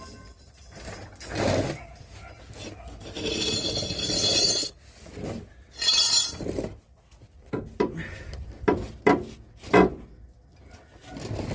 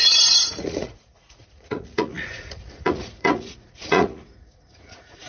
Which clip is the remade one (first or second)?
second